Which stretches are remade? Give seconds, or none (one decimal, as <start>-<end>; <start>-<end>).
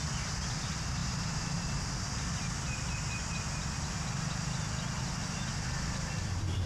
none